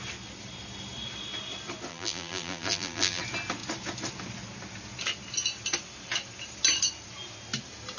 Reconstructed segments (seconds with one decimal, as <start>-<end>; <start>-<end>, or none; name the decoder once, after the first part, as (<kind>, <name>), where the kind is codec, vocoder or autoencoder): 1.9-3.2 (vocoder, BigVGAN v2)